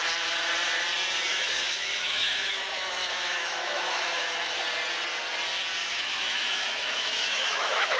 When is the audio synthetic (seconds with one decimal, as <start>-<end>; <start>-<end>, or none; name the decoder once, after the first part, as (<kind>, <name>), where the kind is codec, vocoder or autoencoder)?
1.3-4.5 (autoencoder, DAC-VAE); 5.8-8.0